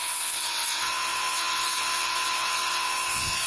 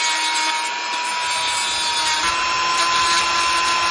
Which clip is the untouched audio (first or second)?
second